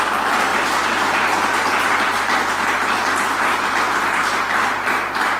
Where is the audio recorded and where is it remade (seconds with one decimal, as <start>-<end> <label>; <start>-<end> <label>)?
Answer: 0.0-5.4 recorded